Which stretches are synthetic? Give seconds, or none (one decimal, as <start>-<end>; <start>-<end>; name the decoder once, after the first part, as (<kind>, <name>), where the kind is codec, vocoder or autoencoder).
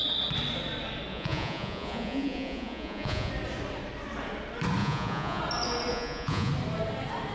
1.1-3.3 (vocoder, Vocos); 4.8-5.4; 5.9-6.5